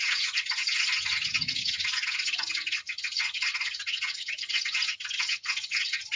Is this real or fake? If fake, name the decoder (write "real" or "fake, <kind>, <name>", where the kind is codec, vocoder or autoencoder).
fake, vocoder, HiFi-GAN